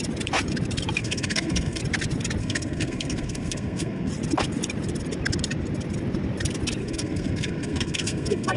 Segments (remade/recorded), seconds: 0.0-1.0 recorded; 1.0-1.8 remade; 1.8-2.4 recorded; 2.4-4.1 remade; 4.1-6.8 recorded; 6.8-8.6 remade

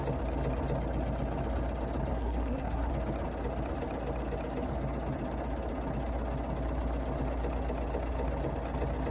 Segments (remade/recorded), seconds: 0.0-2.1 recorded; 2.1-2.9 remade; 2.9-9.1 recorded

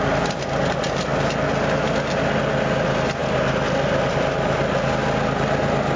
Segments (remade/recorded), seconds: 0.0-6.0 recorded

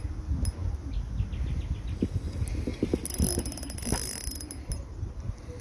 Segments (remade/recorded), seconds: 0.0-5.6 recorded

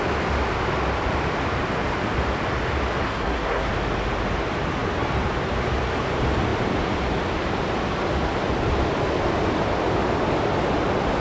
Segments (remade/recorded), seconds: 0.0-3.0 recorded; 3.0-3.7 remade; 3.7-11.2 recorded

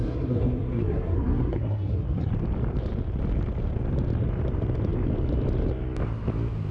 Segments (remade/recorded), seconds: 0.0-2.3 remade; 2.3-6.7 recorded

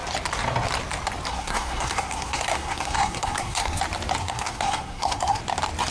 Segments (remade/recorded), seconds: 0.0-1.3 recorded; 1.3-3.8 remade; 3.8-4.2 recorded; 4.2-5.4 remade; 5.4-5.9 recorded